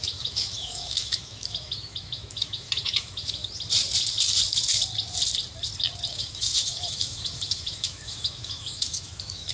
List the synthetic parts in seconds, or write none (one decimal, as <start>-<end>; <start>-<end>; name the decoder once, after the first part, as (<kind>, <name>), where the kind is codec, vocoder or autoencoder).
0.0-3.4 (autoencoder, DAC-VAE); 6.1-9.5